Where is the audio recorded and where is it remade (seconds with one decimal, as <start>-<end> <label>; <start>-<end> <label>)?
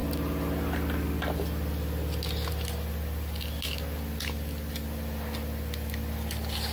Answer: 0.0-6.7 recorded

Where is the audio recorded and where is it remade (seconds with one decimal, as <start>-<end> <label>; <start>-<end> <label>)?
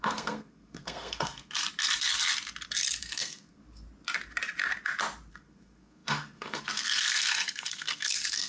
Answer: 0.0-1.6 remade; 1.6-3.0 recorded; 3.0-3.6 remade; 3.6-5.3 recorded; 5.3-8.5 remade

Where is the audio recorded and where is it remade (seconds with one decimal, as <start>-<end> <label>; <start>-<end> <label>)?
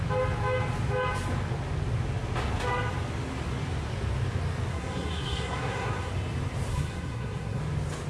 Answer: 0.0-4.7 recorded; 4.7-6.1 remade; 6.1-6.7 recorded; 6.7-7.6 remade; 7.6-8.1 recorded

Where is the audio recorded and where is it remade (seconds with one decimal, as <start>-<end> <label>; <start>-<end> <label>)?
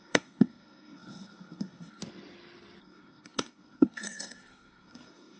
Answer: 0.0-2.0 remade; 2.0-2.8 recorded; 2.8-5.4 remade